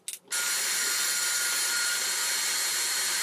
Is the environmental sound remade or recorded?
recorded